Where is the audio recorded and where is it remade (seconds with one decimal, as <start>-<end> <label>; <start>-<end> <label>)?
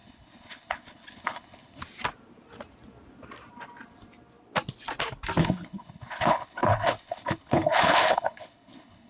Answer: 0.0-1.8 remade; 1.8-5.4 recorded; 5.4-9.1 remade